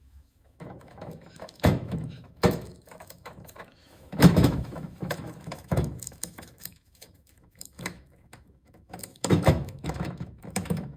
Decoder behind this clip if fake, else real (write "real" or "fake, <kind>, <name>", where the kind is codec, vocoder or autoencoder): fake, autoencoder, DAC-VAE